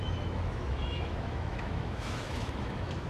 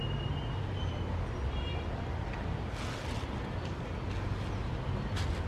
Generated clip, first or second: first